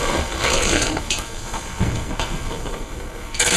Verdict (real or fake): fake